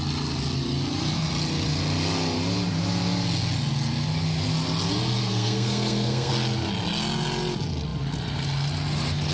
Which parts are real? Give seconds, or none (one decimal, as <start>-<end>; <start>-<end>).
0.0-5.2; 6.3-9.3